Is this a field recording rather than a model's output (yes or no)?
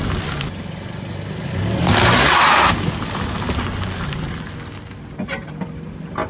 yes